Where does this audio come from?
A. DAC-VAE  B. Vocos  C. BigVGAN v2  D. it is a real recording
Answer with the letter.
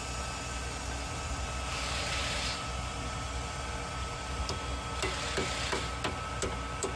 D